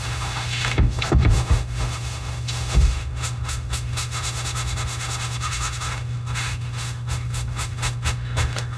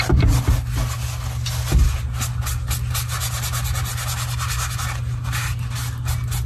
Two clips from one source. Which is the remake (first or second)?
first